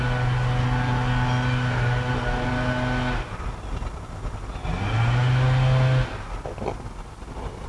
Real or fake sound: real